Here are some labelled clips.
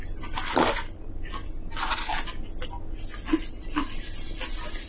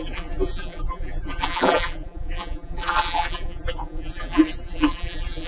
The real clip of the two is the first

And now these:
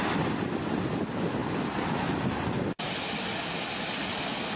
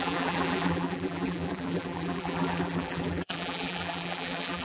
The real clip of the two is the first